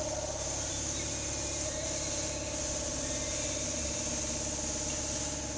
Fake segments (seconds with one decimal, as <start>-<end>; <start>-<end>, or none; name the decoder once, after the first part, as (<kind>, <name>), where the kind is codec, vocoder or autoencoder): 0.7-4.0 (vocoder, BigVGAN v2)